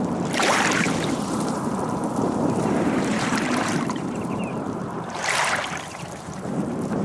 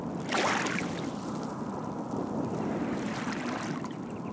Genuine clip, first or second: second